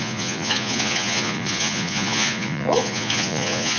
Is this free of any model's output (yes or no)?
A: no